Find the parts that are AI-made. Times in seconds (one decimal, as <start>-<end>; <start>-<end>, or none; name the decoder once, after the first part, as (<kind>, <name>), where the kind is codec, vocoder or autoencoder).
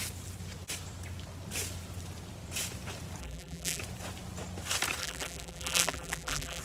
3.2-3.8 (vocoder, BigVGAN v2); 5.0-6.6